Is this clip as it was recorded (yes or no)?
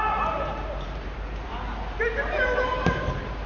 no